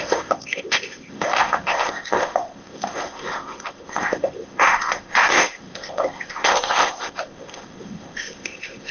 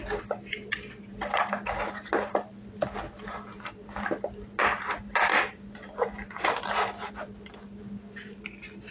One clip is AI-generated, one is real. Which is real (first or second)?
second